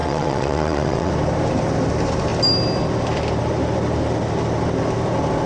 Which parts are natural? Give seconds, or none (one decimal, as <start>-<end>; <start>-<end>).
1.1-5.5